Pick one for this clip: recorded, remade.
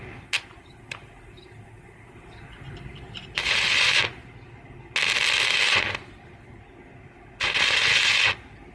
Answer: recorded